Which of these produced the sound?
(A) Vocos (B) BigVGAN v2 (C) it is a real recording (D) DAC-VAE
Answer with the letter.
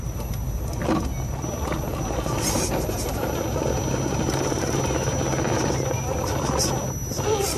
C